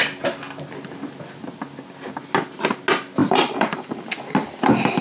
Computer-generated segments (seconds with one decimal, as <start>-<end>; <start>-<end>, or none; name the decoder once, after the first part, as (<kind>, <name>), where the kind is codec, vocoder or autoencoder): 3.2-4.1 (vocoder, BigVGAN v2)